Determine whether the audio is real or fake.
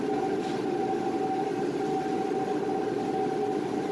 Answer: real